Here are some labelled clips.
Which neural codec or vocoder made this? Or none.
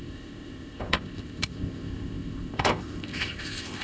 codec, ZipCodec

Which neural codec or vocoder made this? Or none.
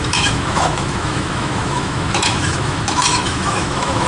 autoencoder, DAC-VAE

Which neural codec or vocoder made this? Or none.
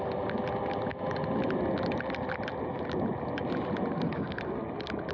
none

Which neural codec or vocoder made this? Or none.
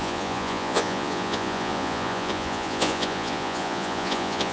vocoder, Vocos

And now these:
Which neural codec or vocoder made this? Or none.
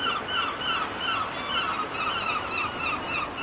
none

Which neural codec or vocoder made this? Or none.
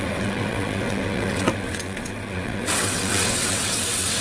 vocoder, WaveNeXt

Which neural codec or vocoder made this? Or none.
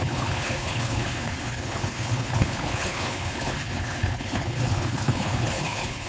codec, HILCodec